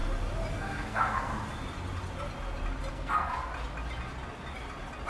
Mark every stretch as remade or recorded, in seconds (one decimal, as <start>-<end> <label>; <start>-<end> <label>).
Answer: 0.0-0.5 recorded; 0.5-1.3 remade; 1.3-2.9 recorded; 2.9-3.5 remade; 3.5-5.1 recorded